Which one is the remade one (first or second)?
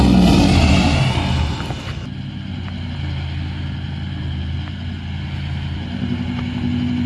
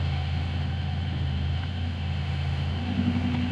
second